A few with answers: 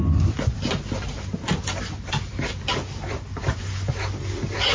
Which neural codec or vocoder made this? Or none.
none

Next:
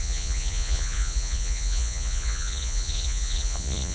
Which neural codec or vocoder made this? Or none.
vocoder, Vocos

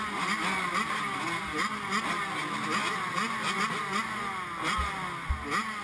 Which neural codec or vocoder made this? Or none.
none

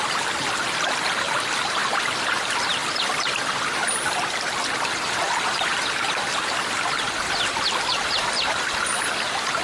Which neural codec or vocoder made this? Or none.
none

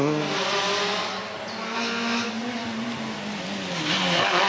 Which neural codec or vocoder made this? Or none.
none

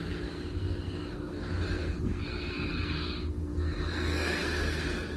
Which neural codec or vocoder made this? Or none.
codec, SNAC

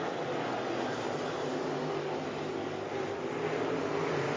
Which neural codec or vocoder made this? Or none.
none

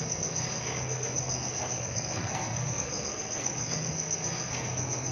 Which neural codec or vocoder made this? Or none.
codec, SNAC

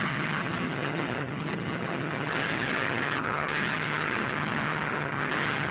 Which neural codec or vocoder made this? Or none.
vocoder, HiFi-GAN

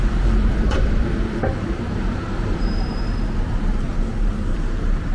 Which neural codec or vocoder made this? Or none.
vocoder, BigVGAN v2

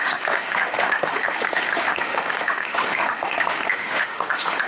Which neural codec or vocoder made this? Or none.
autoencoder, DAC-VAE